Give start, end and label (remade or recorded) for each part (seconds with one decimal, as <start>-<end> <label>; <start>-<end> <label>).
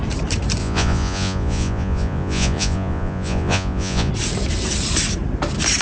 0.0-0.6 recorded; 0.6-4.1 remade; 4.1-5.8 recorded